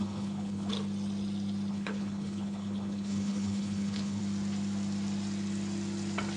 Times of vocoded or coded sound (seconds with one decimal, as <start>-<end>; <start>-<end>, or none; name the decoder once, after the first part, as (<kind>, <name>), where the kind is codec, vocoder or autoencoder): 0.0-0.7 (codec, HILCodec); 1.7-4.2